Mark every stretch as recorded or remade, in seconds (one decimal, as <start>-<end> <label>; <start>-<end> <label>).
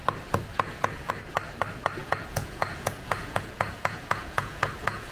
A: 0.0-0.5 recorded; 0.5-1.1 remade; 1.1-2.0 recorded; 2.0-5.1 remade